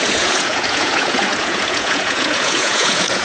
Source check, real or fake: fake